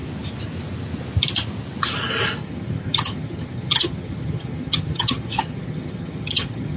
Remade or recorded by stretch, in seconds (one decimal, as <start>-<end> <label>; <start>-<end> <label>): 0.0-2.4 recorded; 2.4-6.8 remade